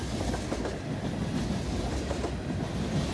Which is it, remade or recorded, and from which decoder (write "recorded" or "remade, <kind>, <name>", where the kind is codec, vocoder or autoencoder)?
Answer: recorded